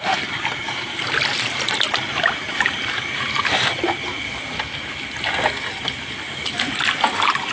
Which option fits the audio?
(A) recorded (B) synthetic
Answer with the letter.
A